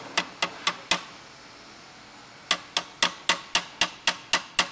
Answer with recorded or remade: recorded